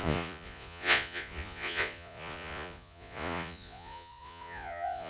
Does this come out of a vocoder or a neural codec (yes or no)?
yes